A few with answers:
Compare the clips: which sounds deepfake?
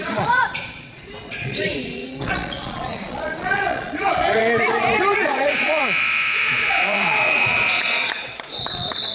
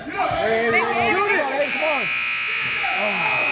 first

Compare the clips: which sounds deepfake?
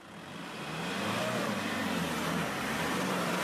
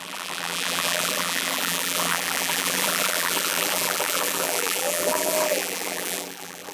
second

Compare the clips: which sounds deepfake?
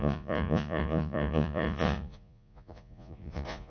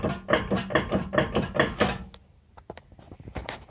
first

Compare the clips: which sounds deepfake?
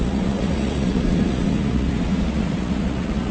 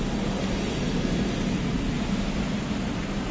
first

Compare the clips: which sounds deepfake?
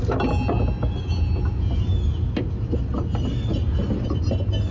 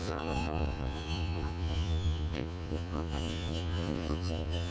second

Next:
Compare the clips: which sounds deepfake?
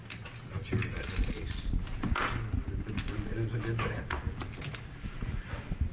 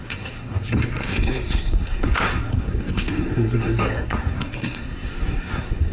second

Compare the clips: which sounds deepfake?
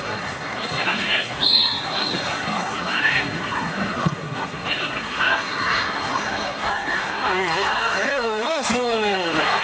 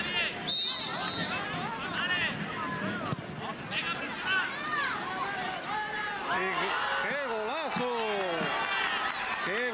first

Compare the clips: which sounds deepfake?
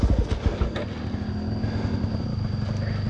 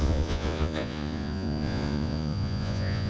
second